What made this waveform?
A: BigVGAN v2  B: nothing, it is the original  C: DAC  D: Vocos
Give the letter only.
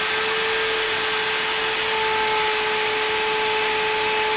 B